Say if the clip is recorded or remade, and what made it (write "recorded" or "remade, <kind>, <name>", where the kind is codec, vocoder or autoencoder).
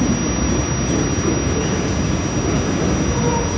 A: recorded